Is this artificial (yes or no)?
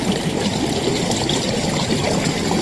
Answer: no